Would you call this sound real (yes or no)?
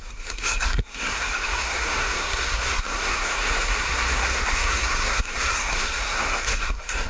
no